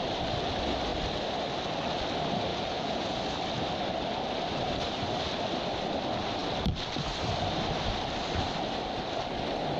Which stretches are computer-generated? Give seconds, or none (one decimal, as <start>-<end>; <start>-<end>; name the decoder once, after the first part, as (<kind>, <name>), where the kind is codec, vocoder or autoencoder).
2.5-3.2 (vocoder, Vocos)